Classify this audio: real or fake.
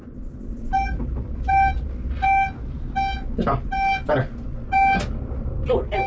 real